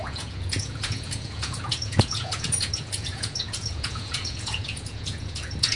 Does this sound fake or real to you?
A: fake